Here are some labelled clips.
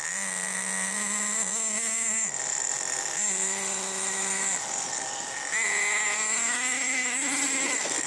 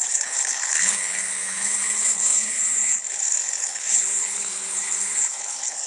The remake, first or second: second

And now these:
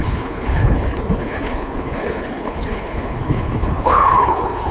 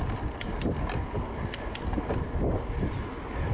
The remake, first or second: first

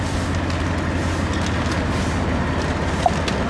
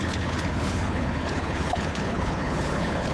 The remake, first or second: second